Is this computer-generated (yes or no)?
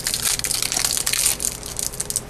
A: no